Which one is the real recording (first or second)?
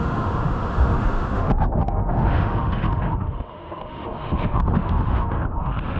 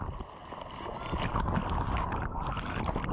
second